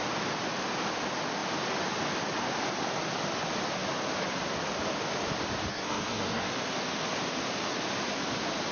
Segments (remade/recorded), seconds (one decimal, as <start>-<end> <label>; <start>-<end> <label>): 0.0-5.7 recorded; 5.7-6.5 remade; 6.5-8.7 recorded